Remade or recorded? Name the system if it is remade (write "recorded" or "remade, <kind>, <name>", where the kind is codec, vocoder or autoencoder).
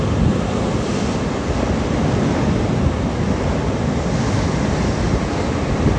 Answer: recorded